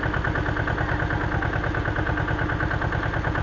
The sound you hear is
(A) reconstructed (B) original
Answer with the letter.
B